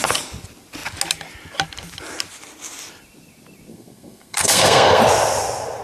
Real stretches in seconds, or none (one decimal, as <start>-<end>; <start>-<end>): 0.0-3.7; 5.0-5.8